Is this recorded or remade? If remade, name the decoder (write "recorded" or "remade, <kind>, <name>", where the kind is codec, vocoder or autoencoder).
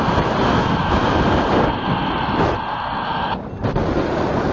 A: recorded